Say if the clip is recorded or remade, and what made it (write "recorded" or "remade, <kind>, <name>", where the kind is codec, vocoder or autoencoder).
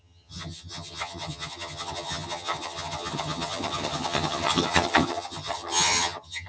remade, vocoder, HiFi-GAN